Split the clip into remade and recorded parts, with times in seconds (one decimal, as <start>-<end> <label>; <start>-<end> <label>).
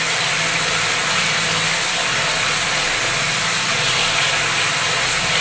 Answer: 0.0-5.4 recorded